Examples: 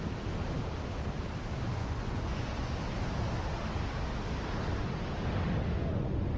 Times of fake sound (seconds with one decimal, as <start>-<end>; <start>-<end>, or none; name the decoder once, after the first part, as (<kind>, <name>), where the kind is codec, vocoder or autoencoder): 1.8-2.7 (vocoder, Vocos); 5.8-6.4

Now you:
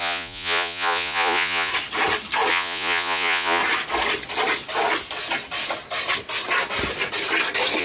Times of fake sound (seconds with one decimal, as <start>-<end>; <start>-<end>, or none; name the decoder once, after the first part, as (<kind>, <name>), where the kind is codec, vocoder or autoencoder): 0.0-1.7 (vocoder, Vocos); 2.5-3.6

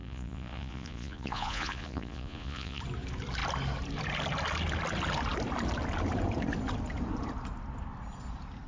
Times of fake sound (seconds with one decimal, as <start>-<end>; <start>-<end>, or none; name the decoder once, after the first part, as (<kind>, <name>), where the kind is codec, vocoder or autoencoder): 0.0-2.8 (vocoder, Vocos)

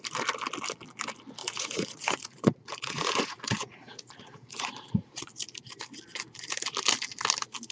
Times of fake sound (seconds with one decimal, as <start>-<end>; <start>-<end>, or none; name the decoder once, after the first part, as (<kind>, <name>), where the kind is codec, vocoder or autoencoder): 1.4-5.3 (vocoder, Vocos)

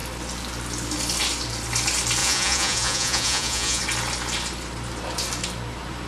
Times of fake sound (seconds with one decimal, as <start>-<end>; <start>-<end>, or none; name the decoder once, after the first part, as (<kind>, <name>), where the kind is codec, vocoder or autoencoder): 2.2-3.8 (vocoder, Vocos)

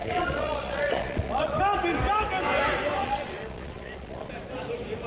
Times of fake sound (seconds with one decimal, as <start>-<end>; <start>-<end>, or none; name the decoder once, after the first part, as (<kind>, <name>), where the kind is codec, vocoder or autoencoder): 0.0-1.6 (vocoder, Vocos); 3.0-4.3